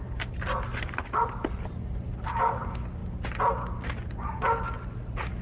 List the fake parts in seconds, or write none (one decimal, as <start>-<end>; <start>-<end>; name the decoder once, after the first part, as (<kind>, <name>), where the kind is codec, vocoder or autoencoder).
none